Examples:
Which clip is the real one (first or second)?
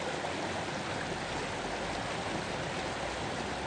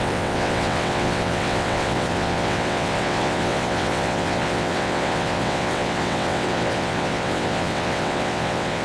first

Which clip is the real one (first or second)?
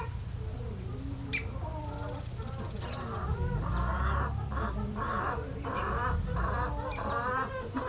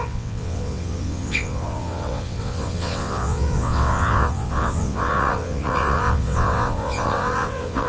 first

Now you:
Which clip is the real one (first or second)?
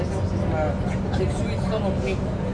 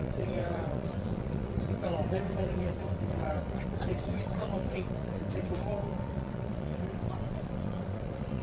first